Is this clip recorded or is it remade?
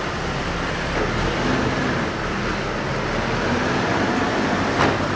recorded